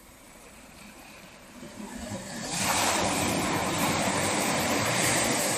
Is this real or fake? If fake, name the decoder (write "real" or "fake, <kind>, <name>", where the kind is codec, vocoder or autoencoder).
fake, vocoder, BigVGAN v2